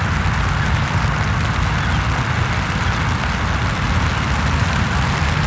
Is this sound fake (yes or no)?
no